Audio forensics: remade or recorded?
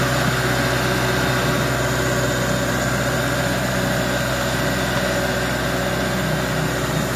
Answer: recorded